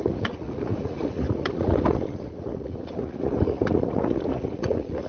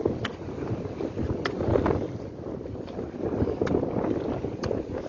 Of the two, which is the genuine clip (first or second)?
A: second